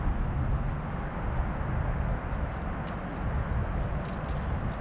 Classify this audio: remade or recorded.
recorded